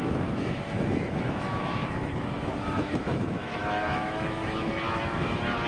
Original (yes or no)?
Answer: no